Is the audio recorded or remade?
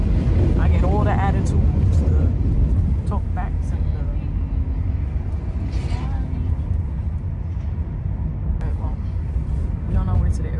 recorded